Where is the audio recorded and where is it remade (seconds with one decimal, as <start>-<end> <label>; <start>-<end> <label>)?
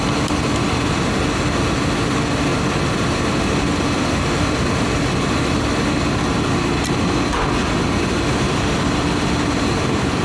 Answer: 0.0-10.2 recorded